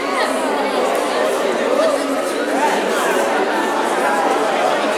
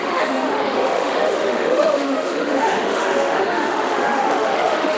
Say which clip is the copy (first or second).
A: second